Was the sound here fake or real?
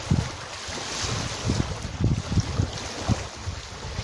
real